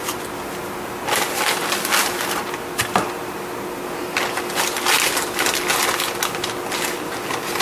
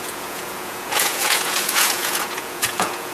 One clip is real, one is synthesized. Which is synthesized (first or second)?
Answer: second